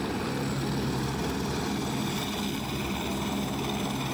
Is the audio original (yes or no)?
yes